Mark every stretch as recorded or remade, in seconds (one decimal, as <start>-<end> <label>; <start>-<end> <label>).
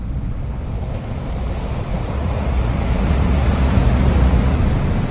0.0-1.9 recorded; 1.9-4.6 remade; 4.6-5.1 recorded